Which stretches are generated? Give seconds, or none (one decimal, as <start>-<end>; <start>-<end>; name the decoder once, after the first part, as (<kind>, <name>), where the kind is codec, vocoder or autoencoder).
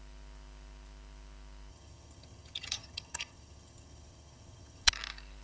1.7-4.9 (vocoder, HiFi-GAN)